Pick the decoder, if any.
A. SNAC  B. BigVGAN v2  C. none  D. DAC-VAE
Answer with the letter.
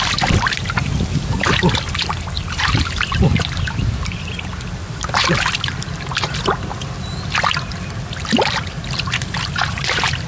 B